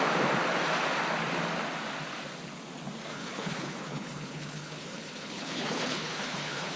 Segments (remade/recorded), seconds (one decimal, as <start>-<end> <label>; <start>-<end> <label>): 0.0-3.1 recorded; 3.1-6.8 remade